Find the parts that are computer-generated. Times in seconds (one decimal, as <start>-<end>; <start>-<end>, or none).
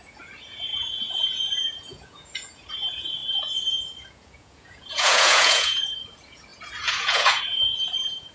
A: 0.0-8.3